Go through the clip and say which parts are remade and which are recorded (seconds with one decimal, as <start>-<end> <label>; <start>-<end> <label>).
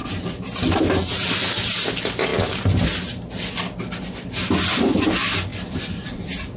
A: 0.0-6.6 recorded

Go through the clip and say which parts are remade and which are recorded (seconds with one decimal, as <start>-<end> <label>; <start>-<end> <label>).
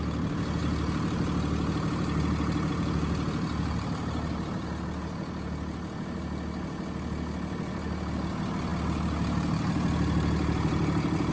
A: 0.0-11.3 recorded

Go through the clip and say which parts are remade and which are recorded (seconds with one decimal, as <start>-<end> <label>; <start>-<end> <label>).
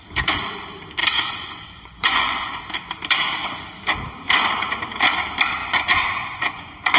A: 0.0-1.0 recorded; 1.0-2.6 remade; 2.6-5.6 recorded; 5.6-7.0 remade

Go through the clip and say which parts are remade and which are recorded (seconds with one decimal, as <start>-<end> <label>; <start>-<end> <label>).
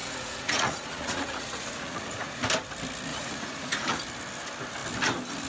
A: 0.0-2.4 remade; 2.4-3.1 recorded; 3.1-4.0 remade; 4.0-5.5 recorded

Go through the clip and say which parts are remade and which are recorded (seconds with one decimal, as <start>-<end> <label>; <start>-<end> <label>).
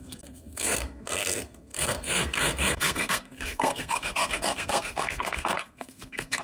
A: 0.0-6.4 remade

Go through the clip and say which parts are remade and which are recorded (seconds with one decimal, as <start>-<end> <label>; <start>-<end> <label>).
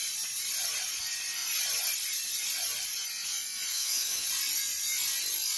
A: 0.0-3.7 recorded; 3.7-4.3 remade; 4.3-5.6 recorded